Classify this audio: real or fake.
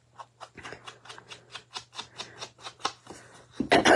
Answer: real